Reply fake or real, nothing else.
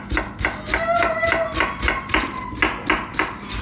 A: real